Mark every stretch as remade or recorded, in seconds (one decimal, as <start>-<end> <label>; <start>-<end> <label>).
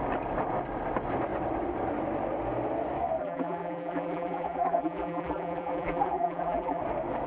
0.0-3.2 recorded; 3.2-6.8 remade; 6.8-7.3 recorded